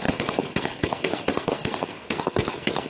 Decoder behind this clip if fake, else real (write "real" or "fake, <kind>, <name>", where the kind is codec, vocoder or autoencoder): fake, codec, SNAC